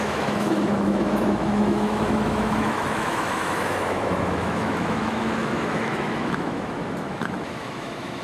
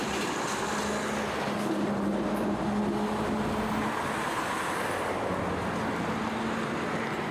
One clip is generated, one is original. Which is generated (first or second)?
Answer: first